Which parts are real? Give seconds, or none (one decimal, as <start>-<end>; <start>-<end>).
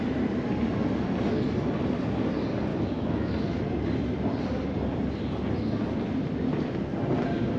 0.0-2.7; 3.6-7.6